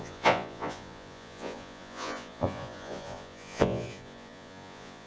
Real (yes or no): no